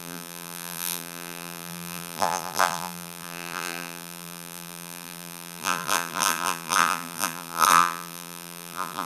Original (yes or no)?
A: no